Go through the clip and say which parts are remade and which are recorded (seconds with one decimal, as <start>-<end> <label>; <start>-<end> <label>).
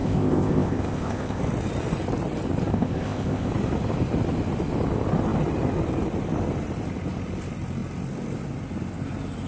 0.0-1.4 remade; 1.4-2.7 recorded; 2.7-3.5 remade; 3.5-9.5 recorded